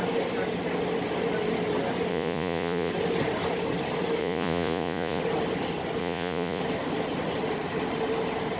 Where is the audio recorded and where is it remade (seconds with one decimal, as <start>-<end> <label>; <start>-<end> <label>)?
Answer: 0.0-2.1 recorded; 2.1-2.9 remade; 2.9-4.2 recorded; 4.2-5.2 remade; 5.2-6.0 recorded; 6.0-6.6 remade; 6.6-8.6 recorded